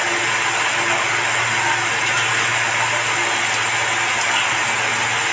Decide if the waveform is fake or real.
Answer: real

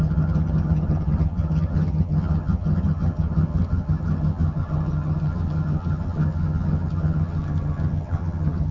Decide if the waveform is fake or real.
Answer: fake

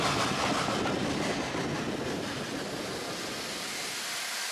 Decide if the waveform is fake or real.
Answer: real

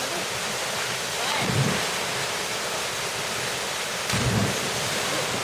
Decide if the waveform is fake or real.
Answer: fake